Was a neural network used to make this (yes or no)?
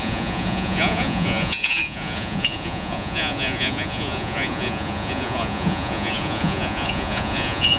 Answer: yes